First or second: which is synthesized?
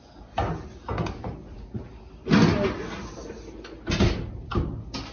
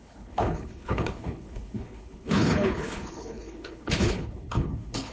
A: second